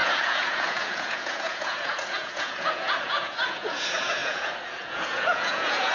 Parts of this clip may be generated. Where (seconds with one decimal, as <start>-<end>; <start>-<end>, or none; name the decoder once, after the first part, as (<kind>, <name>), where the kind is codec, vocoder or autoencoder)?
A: 0.0-5.9 (vocoder, Vocos)

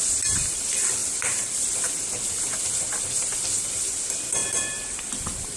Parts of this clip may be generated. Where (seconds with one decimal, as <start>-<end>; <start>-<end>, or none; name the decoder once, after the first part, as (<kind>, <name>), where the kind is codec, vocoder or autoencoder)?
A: 1.0-2.2 (vocoder, BigVGAN v2); 4.4-5.1

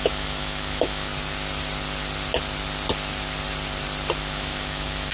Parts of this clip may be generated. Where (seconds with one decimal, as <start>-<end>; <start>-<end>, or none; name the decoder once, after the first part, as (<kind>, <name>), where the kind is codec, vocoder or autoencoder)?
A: 0.0-1.1 (autoencoder, DAC-VAE); 4.2-5.1

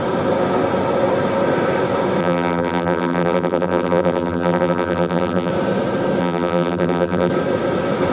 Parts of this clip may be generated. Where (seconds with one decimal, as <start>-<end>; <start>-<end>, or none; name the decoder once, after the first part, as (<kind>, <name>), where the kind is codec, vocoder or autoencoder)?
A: 2.2-5.5 (vocoder, BigVGAN v2); 6.2-7.3

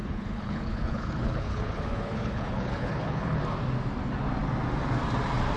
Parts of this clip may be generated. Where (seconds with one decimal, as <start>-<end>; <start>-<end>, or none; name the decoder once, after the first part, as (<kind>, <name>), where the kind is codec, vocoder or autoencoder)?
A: 0.0-3.4 (codec, HILCodec)